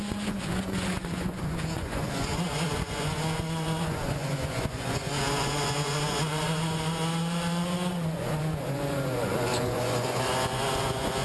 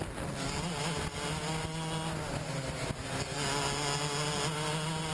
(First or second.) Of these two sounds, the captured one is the second